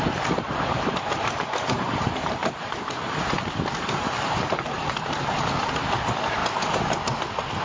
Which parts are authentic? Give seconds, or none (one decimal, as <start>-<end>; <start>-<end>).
0.0-7.6